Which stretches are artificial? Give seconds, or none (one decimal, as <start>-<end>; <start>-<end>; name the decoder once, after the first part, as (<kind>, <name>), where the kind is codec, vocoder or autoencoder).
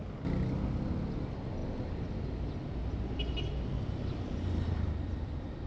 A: none